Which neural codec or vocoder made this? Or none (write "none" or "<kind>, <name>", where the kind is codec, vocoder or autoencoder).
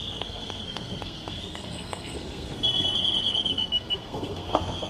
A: codec, SNAC